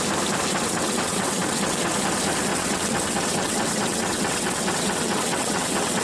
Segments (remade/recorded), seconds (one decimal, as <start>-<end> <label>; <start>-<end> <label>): 0.0-0.5 recorded; 0.5-1.9 remade; 1.9-2.5 recorded; 2.5-6.0 remade